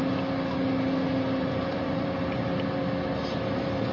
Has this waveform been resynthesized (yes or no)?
no